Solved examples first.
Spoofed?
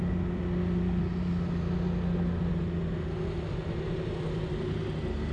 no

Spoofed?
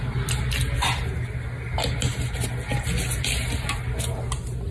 no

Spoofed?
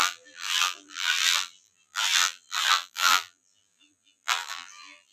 yes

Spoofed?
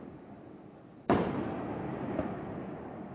yes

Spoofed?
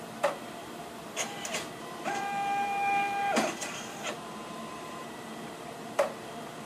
yes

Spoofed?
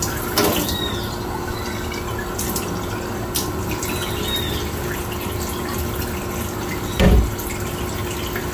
no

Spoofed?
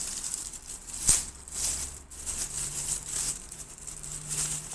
yes